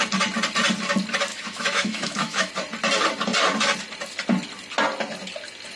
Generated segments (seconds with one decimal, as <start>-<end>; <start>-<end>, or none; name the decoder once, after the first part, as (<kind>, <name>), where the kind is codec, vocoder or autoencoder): 1.3-2.5 (autoencoder, DAC-VAE)